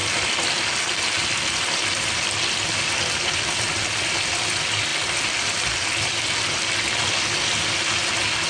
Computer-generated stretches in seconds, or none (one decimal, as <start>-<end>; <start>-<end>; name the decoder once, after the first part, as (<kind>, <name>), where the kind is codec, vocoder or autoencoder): none